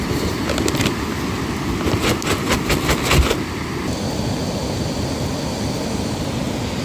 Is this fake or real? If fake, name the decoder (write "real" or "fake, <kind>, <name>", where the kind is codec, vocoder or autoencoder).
real